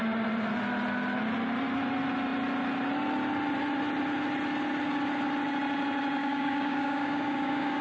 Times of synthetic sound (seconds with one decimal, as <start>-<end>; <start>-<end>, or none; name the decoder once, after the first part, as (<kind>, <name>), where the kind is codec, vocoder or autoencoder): 6.2-7.8 (codec, DAC)